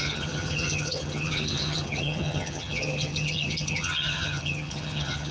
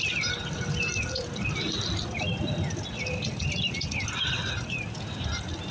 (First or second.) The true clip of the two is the second